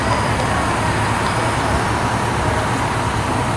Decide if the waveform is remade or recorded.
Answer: recorded